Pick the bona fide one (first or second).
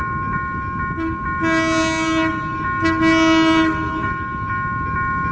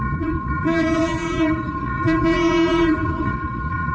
first